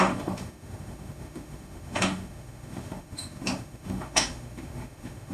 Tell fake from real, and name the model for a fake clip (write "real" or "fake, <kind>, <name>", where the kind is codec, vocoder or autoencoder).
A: fake, autoencoder, DAC-VAE